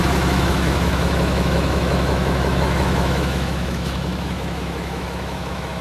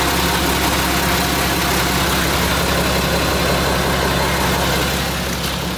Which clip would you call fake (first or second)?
first